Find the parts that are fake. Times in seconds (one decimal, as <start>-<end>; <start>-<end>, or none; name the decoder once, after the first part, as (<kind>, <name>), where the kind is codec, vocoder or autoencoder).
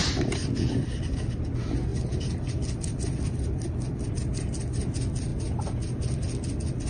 1.9-4.1 (vocoder, BigVGAN v2)